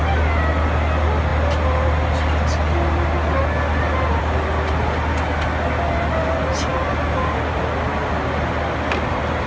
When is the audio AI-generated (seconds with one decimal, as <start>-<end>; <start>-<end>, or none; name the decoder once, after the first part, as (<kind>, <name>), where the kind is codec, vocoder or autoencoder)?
none